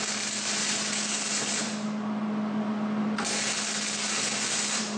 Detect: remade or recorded recorded